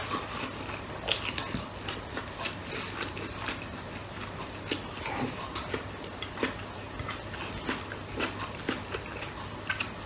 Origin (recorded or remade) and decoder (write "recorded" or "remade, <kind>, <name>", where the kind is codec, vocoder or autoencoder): recorded